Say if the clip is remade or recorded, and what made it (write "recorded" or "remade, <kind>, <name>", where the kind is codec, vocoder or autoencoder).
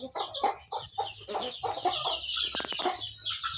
recorded